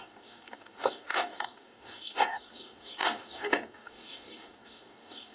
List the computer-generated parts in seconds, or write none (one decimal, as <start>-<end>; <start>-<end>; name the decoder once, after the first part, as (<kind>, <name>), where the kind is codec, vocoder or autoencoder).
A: 0.0-5.3 (codec, DAC)